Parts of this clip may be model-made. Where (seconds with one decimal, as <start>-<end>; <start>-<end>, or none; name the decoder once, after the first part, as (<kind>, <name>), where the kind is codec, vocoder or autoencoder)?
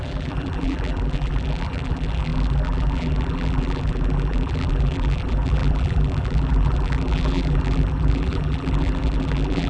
0.0-9.7 (vocoder, BigVGAN v2)